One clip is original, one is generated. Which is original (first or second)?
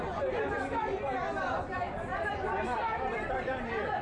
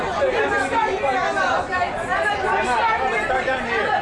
second